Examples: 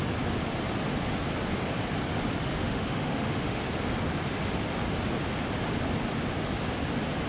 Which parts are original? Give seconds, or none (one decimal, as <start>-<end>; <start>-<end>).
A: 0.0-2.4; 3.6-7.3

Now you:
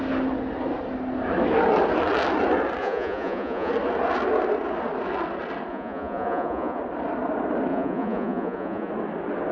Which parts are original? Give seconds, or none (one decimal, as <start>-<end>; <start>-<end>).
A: 0.0-2.8; 3.7-5.7; 6.8-7.7; 8.9-9.5

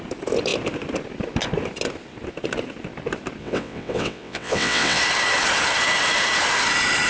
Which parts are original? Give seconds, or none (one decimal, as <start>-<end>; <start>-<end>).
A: 0.0-3.4; 5.0-7.1